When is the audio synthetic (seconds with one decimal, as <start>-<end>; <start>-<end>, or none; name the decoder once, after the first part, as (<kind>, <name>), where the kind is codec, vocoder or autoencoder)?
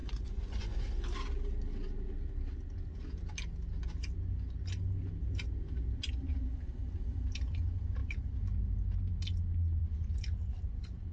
0.0-0.8 (vocoder, Vocos)